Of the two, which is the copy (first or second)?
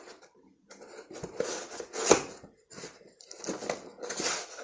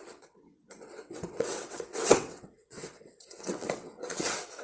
second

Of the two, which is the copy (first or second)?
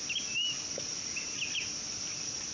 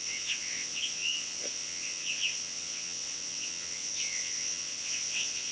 second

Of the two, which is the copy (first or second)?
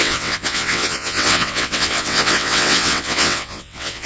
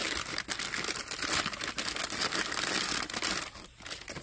first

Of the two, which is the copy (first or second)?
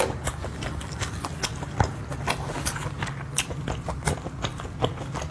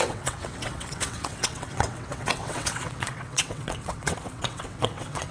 second